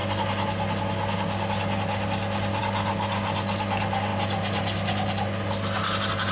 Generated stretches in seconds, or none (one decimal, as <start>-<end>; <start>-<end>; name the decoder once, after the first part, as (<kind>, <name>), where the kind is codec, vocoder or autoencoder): none